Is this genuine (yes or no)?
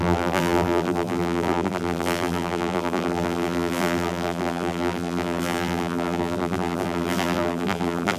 no